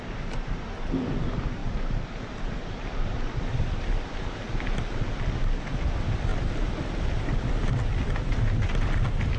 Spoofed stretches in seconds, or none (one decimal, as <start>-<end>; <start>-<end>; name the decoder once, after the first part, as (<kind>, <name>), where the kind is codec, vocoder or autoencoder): 1.6-4.3 (vocoder, BigVGAN v2); 6.3-7.5